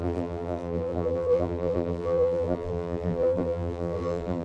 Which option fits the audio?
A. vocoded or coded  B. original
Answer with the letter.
A